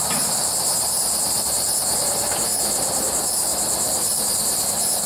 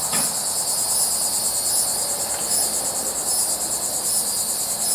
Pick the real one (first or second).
second